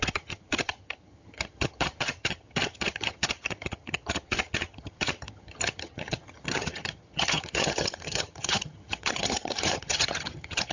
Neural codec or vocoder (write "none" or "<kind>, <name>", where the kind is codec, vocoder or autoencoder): vocoder, HiFi-GAN